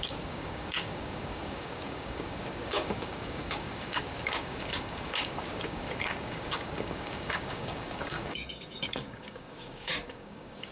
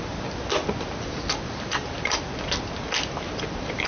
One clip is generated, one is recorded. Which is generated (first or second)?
first